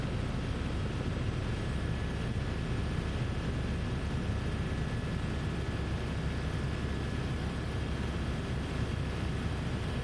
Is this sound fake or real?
real